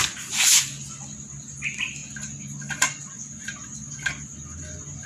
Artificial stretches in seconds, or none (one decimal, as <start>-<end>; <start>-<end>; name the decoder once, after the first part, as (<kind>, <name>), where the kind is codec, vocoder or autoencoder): none